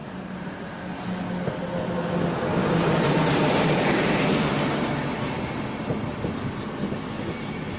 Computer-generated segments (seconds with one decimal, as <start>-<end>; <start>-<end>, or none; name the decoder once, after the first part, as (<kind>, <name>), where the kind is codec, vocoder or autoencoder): 0.0-0.7 (vocoder, BigVGAN v2); 2.6-4.5